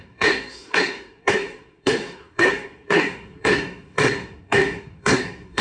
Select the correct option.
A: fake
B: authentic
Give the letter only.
A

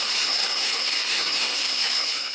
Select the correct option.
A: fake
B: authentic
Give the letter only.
A